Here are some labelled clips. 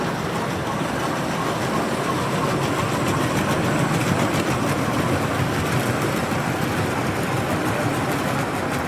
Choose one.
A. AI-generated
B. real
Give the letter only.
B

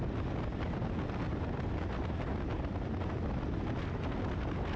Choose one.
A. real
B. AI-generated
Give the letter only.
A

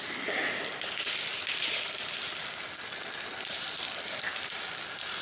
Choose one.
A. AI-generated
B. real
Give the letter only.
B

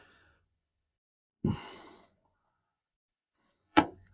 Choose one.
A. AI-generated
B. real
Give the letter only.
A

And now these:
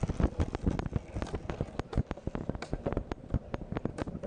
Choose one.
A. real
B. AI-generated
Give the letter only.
A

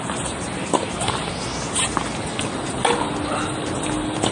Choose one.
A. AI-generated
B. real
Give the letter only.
B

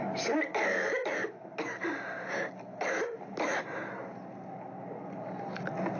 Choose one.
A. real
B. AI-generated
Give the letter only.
A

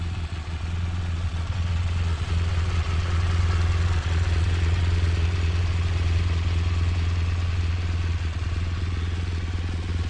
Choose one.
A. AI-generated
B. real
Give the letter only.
A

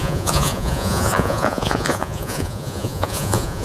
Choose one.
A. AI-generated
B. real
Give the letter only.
A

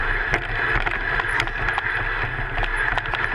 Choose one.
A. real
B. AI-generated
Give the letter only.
A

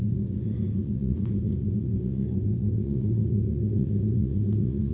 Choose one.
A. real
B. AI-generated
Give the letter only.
B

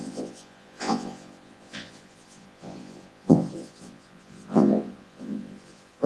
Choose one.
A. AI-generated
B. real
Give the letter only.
A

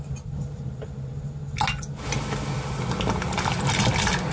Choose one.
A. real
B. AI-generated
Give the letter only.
A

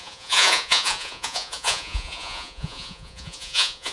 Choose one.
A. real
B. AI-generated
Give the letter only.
B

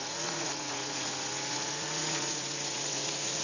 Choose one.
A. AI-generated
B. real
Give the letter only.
A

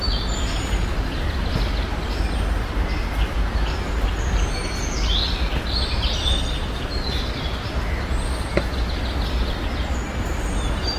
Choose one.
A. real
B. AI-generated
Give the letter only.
A